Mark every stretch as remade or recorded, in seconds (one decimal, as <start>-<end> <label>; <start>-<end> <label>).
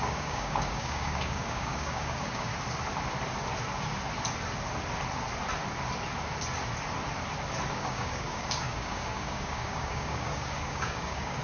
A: 0.0-2.5 remade; 2.5-7.7 recorded; 7.7-11.4 remade